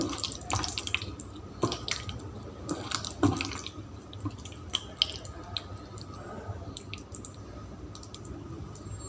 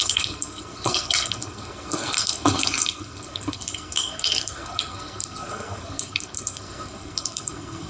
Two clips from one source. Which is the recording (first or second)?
first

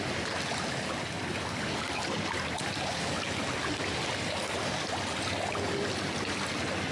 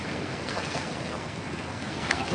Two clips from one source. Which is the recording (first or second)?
first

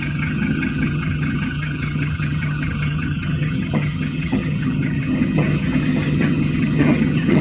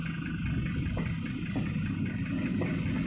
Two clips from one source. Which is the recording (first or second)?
second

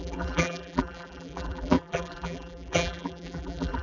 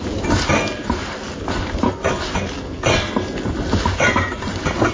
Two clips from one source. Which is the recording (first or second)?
second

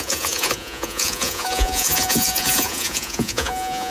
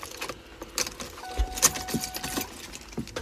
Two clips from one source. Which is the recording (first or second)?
second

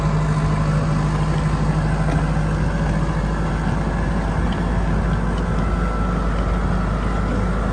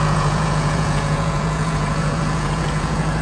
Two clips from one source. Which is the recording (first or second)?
first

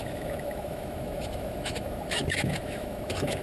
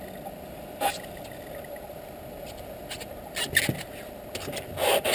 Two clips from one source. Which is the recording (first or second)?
second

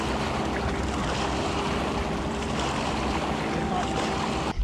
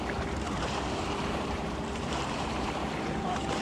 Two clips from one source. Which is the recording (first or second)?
first